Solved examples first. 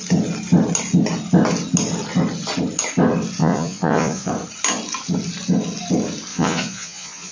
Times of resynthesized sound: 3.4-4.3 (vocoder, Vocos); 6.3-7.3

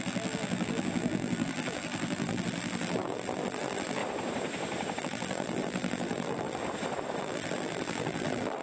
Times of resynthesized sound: 0.0-4.0 (vocoder, BigVGAN v2); 5.0-6.6; 7.2-8.6

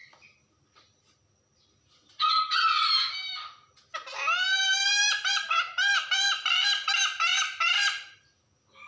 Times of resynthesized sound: none

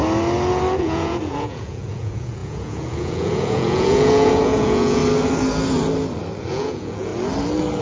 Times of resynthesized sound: 0.8-5.0 (vocoder, Vocos); 6.5-7.1

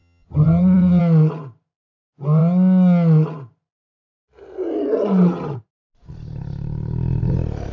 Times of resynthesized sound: 0.0-1.0 (vocoder, HiFi-GAN)